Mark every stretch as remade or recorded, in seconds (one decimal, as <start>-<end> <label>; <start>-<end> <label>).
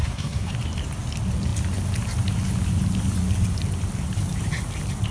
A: 0.0-0.5 remade; 0.5-5.1 recorded